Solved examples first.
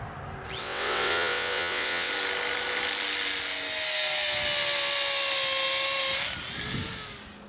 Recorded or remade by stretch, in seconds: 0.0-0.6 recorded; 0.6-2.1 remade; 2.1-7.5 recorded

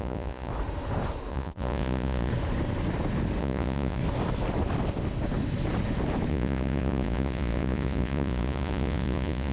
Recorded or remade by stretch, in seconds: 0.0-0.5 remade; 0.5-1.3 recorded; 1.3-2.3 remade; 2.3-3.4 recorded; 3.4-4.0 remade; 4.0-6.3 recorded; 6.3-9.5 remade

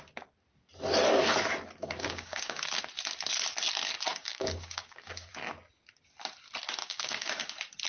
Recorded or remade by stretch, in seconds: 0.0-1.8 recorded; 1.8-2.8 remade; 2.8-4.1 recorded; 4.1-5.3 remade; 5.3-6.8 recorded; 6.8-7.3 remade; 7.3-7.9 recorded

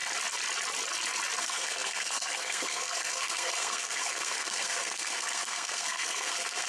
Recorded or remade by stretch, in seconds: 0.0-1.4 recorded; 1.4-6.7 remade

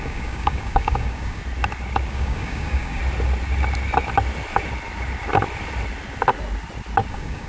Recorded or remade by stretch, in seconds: 0.0-1.4 remade; 1.4-2.1 recorded; 2.1-3.0 remade; 3.0-7.1 recorded; 7.1-7.5 remade